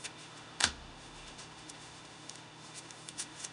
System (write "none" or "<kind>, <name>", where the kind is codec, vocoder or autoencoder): autoencoder, DAC-VAE